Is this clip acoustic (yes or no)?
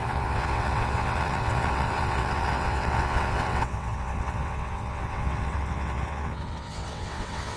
no